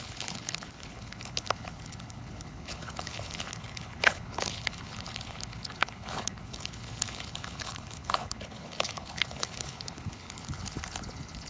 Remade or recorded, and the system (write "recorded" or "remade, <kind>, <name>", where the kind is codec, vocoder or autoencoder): remade, codec, HILCodec